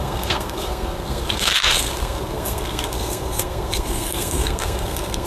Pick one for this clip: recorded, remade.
remade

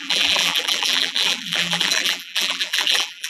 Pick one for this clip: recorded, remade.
remade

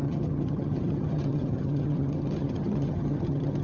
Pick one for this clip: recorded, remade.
remade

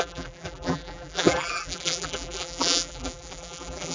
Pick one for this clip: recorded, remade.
remade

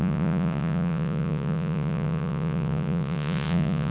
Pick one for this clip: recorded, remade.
remade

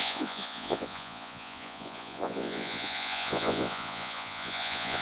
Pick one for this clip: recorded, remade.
remade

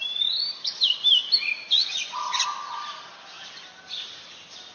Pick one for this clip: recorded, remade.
recorded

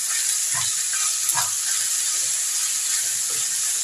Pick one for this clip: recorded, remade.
recorded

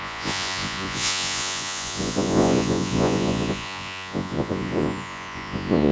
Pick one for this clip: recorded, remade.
remade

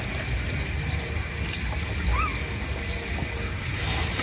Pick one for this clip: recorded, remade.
recorded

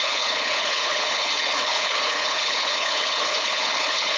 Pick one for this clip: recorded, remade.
remade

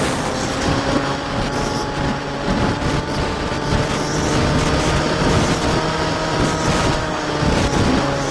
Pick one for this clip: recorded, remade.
recorded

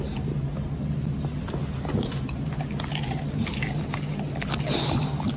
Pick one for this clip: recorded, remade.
recorded